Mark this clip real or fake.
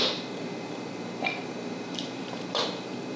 fake